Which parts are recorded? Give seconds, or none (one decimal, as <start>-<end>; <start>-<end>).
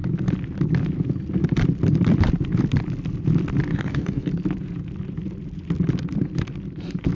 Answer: 0.0-3.7; 4.3-7.1